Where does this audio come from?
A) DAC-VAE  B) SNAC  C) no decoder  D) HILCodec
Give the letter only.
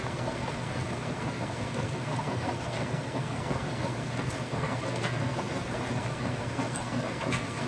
B